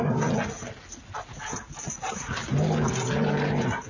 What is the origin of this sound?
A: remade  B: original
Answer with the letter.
B